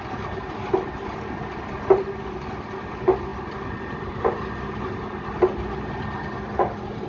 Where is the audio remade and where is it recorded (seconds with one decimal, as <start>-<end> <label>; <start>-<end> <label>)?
0.0-7.1 recorded